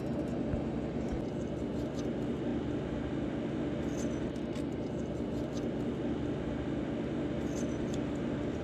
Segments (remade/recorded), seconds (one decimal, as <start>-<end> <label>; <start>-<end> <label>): 0.0-8.6 recorded

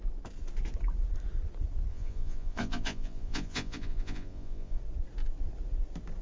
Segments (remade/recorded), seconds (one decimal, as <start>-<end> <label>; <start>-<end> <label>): 0.0-1.9 recorded; 1.9-4.8 remade; 4.8-6.2 recorded